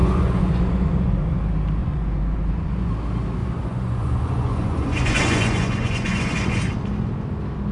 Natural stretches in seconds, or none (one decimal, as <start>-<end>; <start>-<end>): 1.4-1.8; 2.9-3.4; 6.6-7.7